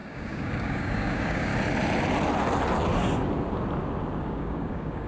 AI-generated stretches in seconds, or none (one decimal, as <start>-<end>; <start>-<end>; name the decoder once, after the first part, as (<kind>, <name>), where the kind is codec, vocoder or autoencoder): 0.0-1.5 (codec, DAC); 4.2-5.1